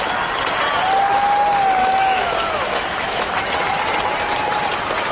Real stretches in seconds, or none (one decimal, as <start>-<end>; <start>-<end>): 0.0-1.8; 3.3-5.1